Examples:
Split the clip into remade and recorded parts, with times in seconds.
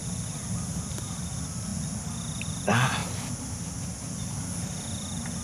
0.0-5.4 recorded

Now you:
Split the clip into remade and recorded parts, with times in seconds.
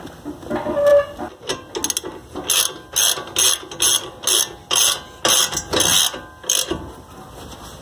0.0-7.8 recorded